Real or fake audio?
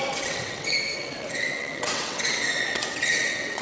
fake